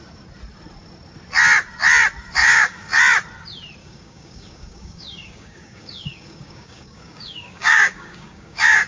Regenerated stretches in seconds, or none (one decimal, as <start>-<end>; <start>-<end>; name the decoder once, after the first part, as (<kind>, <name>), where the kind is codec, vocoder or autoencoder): 2.4-3.0 (codec, DAC); 3.8-8.9